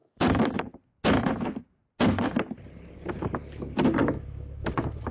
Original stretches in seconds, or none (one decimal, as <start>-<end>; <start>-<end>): 0.6-4.0